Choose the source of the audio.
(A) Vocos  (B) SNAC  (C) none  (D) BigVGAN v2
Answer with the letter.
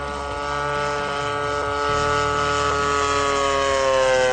C